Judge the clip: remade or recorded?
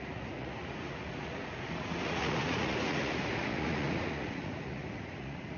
remade